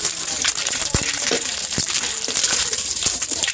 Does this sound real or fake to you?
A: fake